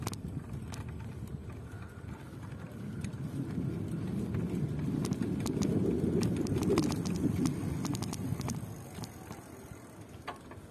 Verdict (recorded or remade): recorded